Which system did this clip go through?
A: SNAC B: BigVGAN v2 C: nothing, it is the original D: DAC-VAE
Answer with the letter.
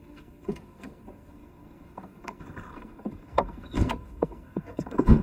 A